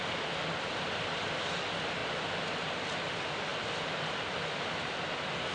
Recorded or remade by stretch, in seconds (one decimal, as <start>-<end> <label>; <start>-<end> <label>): 0.0-5.5 recorded